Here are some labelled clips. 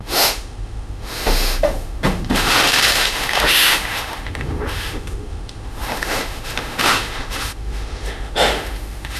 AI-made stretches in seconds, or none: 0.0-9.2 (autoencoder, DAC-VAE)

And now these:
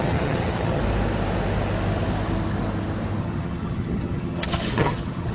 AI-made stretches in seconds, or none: 0.0-0.8 (vocoder, HiFi-GAN); 3.2-5.3

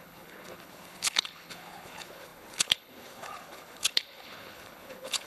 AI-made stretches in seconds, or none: 0.0-5.3 (codec, HILCodec)